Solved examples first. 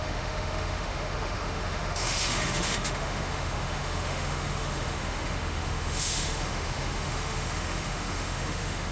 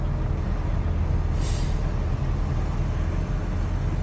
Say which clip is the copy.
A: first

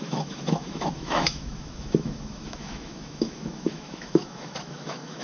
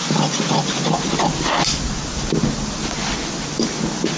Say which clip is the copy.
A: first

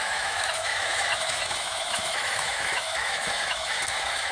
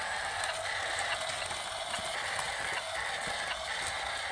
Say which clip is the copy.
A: first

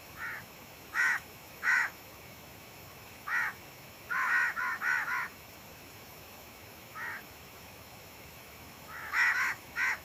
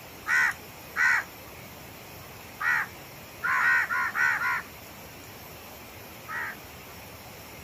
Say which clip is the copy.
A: first